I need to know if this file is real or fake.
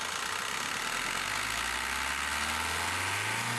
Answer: real